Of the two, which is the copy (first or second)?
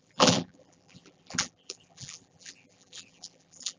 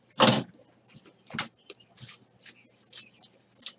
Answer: first